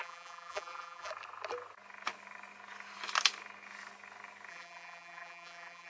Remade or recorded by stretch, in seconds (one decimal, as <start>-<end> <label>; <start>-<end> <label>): 0.0-1.1 remade; 1.1-4.5 recorded; 4.5-5.9 remade